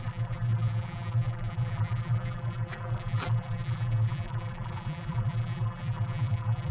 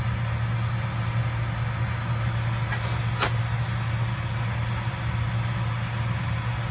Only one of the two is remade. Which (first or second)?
first